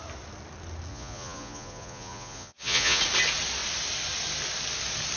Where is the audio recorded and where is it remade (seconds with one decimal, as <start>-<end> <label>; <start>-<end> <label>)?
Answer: 0.0-0.9 recorded; 0.9-3.0 remade; 3.0-5.2 recorded